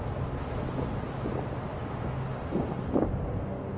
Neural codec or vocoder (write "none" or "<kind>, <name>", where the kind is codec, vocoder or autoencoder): none